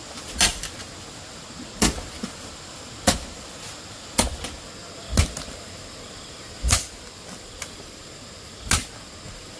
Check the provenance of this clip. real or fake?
real